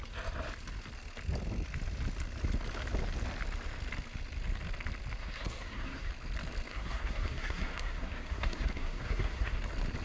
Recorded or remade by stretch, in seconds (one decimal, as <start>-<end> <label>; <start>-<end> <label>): 0.0-5.2 recorded; 5.2-6.1 remade; 6.1-6.7 recorded; 6.7-9.6 remade; 9.6-10.0 recorded